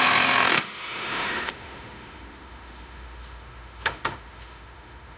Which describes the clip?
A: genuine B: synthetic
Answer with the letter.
B